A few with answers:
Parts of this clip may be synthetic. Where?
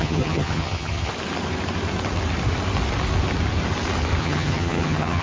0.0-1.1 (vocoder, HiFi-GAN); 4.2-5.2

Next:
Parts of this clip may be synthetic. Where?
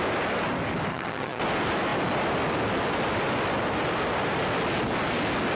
0.9-1.4 (vocoder, HiFi-GAN)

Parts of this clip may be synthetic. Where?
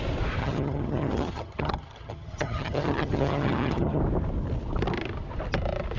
0.4-4.0 (vocoder, HiFi-GAN)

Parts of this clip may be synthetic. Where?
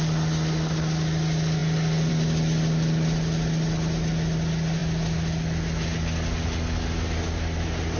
none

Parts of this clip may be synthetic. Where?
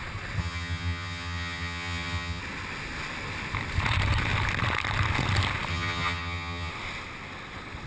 0.4-2.4 (vocoder, HiFi-GAN); 5.7-6.7